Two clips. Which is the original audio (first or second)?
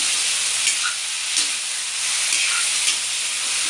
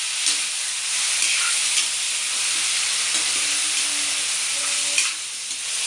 first